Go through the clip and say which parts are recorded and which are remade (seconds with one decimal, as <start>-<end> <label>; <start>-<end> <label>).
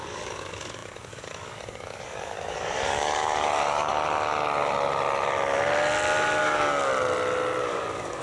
0.0-3.9 remade; 3.9-6.4 recorded; 6.4-6.9 remade; 6.9-7.6 recorded; 7.6-8.2 remade